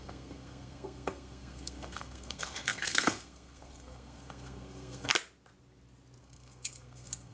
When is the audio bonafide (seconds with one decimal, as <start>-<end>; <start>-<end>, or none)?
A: 5.1-6.2